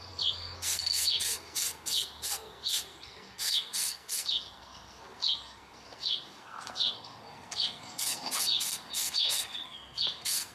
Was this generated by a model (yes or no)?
yes